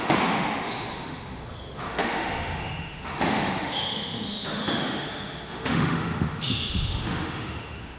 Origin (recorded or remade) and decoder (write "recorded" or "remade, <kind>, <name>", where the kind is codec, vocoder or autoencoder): remade, autoencoder, DAC-VAE